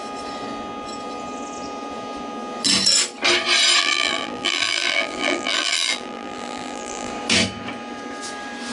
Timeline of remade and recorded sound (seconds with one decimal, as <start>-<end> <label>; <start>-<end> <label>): 0.0-3.8 recorded; 3.8-7.1 remade; 7.1-8.7 recorded